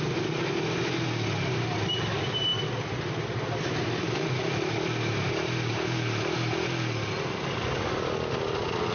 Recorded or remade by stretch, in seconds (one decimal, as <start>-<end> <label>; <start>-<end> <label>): 0.0-8.9 recorded